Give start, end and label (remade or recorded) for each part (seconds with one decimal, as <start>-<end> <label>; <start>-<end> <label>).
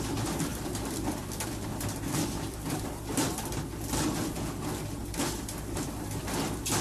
0.0-0.5 recorded; 0.5-3.5 remade; 3.5-5.0 recorded; 5.0-6.2 remade; 6.2-6.8 recorded